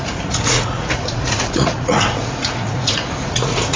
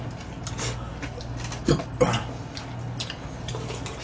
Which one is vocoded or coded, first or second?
first